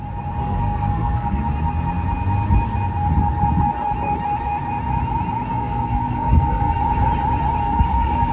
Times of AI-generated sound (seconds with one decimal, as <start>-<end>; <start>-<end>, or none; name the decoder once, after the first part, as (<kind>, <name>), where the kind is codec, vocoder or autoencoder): 0.4-1.4 (codec, SNAC); 5.5-6.8; 7.6-8.3